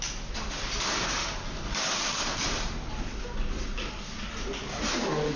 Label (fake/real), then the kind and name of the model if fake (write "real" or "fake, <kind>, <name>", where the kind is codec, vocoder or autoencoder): real